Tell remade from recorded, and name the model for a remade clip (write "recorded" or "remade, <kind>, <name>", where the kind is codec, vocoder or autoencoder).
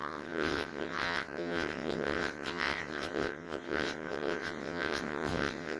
remade, vocoder, WaveNeXt